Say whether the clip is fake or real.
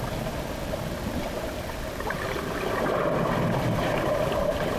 real